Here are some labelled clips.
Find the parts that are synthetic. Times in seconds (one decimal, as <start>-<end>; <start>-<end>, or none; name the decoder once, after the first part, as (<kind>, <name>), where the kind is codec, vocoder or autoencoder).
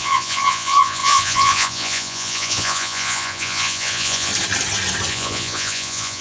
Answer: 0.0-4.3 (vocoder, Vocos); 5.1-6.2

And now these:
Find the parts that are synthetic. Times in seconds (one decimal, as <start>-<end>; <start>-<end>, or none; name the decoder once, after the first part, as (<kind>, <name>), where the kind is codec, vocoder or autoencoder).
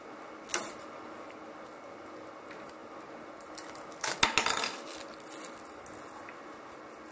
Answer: none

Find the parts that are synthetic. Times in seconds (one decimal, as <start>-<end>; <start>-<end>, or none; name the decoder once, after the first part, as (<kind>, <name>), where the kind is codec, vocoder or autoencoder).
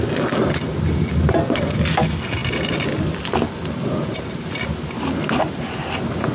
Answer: none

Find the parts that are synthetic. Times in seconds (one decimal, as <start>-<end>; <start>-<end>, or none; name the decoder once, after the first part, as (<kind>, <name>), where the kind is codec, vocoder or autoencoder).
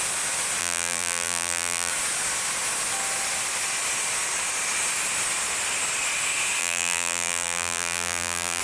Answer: 0.6-1.9 (vocoder, BigVGAN v2); 6.6-8.6